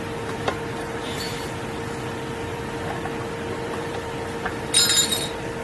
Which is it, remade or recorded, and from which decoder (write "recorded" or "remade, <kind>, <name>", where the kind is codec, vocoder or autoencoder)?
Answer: remade, vocoder, BigVGAN v2